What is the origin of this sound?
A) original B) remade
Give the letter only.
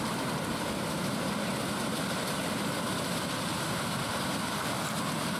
B